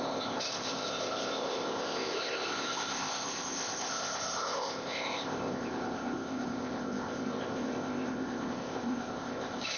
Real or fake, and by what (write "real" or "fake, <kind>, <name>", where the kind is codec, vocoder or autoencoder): fake, codec, ZipCodec